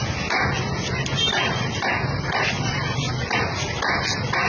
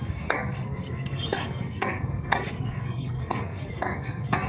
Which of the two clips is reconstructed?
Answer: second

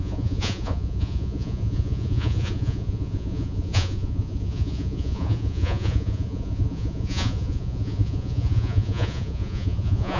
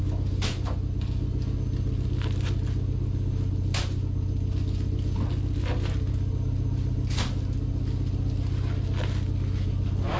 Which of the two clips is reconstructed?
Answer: first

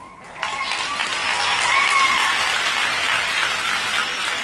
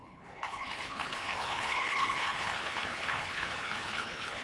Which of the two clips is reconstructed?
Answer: second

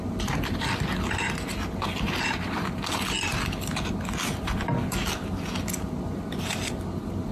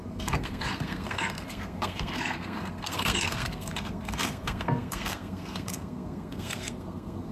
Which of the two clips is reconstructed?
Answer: second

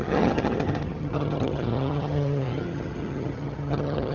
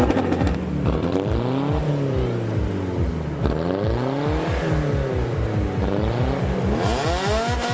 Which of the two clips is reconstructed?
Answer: first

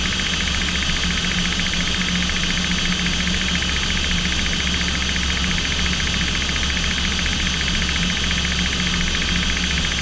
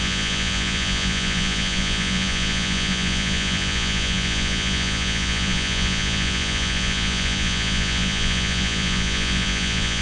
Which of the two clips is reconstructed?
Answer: second